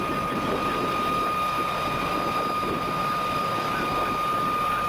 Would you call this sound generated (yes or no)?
no